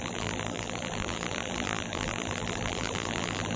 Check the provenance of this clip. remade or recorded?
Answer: remade